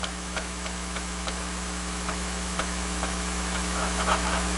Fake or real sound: fake